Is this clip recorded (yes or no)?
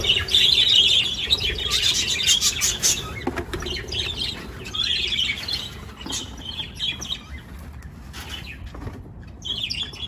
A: yes